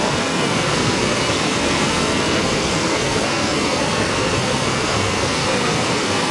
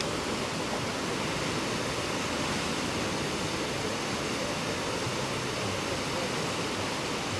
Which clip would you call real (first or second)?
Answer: second